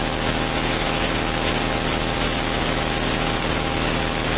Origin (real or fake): fake